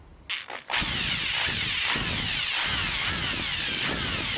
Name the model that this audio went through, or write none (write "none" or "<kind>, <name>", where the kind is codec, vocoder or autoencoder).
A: none